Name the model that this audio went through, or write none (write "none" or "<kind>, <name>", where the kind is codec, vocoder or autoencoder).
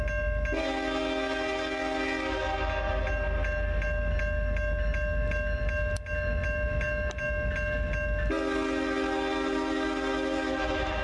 none